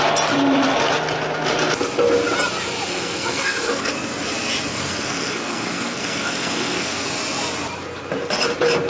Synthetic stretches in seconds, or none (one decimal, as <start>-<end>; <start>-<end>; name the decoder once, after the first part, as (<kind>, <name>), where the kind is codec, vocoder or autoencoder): 2.9-3.9 (codec, SNAC); 4.7-7.1